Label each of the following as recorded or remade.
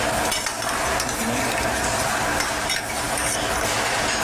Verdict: recorded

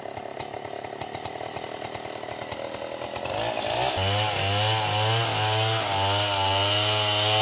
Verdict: recorded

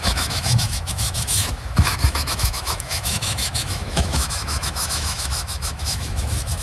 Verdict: remade